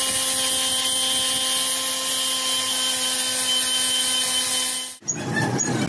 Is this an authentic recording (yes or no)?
yes